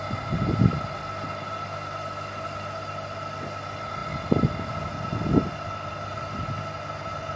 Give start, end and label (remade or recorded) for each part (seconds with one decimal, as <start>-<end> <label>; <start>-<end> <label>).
0.0-4.0 recorded; 4.0-4.7 remade; 4.7-7.4 recorded